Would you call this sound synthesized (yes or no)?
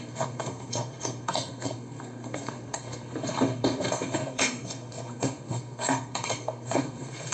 yes